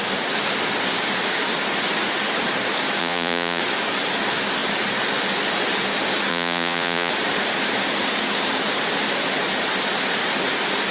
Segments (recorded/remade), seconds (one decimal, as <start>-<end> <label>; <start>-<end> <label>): 0.0-3.0 recorded; 3.0-3.6 remade; 3.6-6.3 recorded; 6.3-7.1 remade; 7.1-10.9 recorded